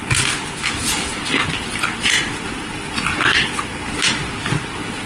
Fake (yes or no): no